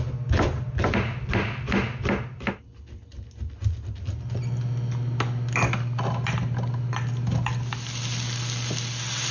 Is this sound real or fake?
real